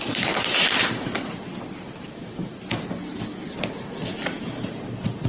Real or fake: real